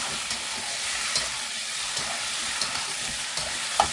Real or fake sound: real